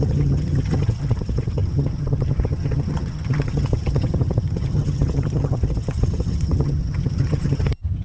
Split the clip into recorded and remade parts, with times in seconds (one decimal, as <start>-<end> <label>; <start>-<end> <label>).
0.0-8.0 remade

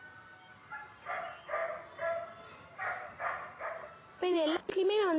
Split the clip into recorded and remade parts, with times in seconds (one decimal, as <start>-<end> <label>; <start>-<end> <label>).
0.0-1.6 recorded; 1.6-4.7 remade; 4.7-5.2 recorded

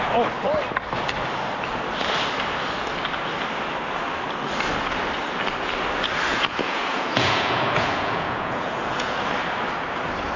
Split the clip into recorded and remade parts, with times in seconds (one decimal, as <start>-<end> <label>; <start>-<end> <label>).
0.0-6.3 recorded; 6.3-9.2 remade; 9.2-10.4 recorded

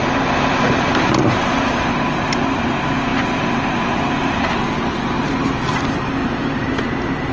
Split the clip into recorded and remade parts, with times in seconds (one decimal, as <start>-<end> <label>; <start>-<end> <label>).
0.0-6.2 recorded; 6.2-7.3 remade